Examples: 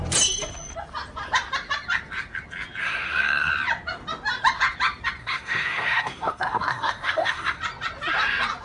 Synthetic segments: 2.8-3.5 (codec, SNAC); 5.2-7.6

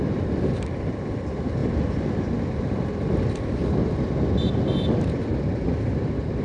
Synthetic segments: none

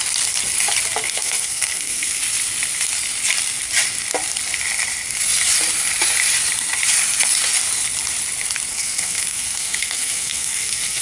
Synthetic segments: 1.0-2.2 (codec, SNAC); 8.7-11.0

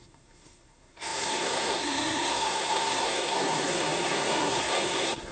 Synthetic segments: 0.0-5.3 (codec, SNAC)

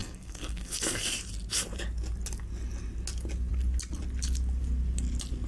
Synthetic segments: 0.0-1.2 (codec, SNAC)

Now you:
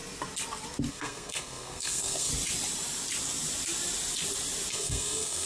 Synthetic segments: 0.9-2.3 (codec, SNAC); 4.7-5.5

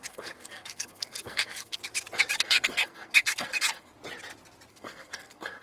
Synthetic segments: 0.0-1.8 (codec, SNAC); 2.4-3.9; 4.7-5.6